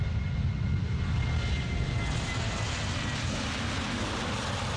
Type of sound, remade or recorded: recorded